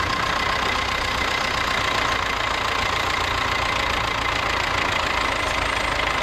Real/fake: real